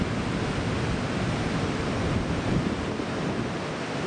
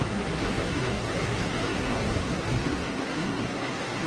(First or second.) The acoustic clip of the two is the first